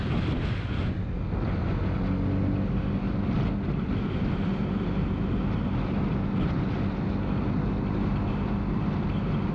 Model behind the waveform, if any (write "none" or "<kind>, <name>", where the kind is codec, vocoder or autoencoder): none